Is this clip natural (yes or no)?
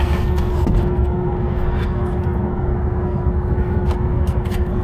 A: no